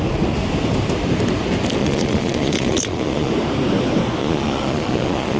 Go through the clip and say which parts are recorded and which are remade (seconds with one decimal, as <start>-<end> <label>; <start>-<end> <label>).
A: 0.0-1.8 recorded; 1.8-3.3 remade; 3.3-4.2 recorded; 4.2-5.4 remade